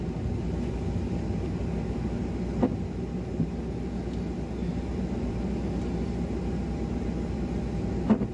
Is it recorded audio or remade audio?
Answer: recorded